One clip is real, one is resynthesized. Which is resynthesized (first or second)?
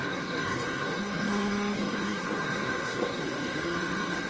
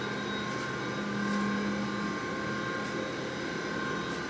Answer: first